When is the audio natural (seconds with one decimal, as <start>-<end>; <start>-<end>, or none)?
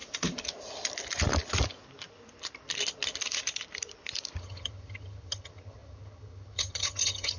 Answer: 0.0-4.4